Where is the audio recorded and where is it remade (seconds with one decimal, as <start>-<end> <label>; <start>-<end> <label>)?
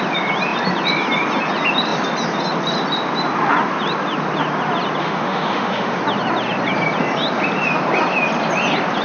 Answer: 0.0-5.0 recorded; 5.0-6.0 remade; 6.0-9.0 recorded